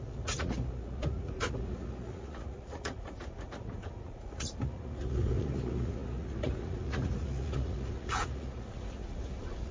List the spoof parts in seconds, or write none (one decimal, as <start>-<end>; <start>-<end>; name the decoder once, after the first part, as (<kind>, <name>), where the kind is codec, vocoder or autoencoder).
0.0-9.7 (vocoder, Vocos)